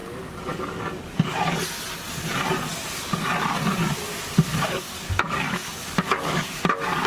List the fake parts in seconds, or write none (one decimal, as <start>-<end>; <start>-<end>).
0.0-1.6; 4.5-6.6